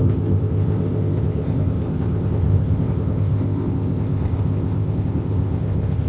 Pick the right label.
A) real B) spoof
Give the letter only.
B